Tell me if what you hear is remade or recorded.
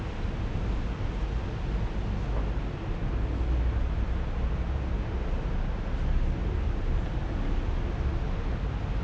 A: recorded